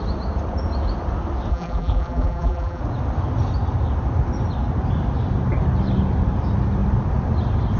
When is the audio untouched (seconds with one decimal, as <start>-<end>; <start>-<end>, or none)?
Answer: 0.0-1.5; 2.8-7.8